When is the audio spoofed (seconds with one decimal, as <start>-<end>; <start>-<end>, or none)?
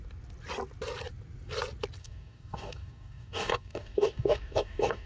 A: 2.0-5.1